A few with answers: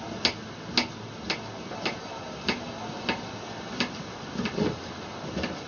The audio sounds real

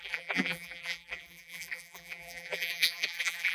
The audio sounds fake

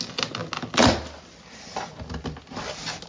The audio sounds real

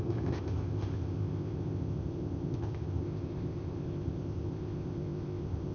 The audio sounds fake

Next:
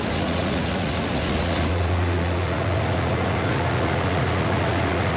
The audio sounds fake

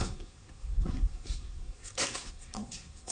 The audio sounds fake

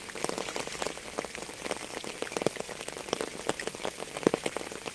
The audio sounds real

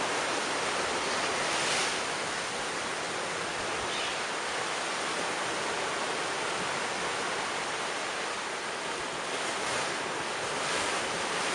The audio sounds real